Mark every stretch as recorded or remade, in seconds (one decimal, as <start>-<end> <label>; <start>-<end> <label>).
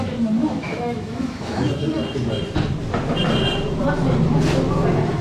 0.0-0.4 recorded; 0.4-1.7 remade; 1.7-5.2 recorded